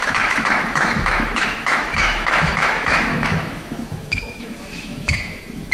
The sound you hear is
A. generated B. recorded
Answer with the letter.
A